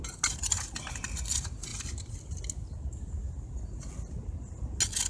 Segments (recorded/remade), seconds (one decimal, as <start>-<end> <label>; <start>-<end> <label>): 0.0-5.1 recorded